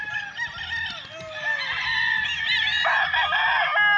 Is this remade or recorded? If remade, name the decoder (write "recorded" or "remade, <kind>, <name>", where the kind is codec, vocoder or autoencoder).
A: recorded